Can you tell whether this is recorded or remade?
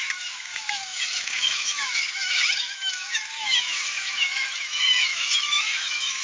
remade